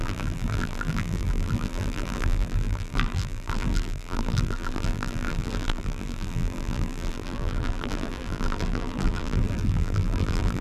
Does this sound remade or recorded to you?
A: remade